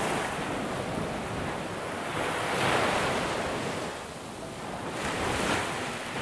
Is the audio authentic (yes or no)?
yes